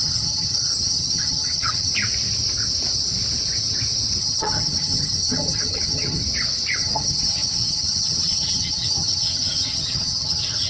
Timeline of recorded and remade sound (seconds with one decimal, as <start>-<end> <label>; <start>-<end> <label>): 0.0-1.9 remade; 1.9-4.2 recorded; 4.2-6.2 remade; 6.2-6.8 recorded; 6.8-10.7 remade